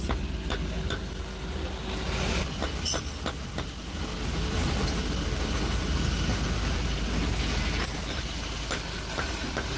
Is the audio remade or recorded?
recorded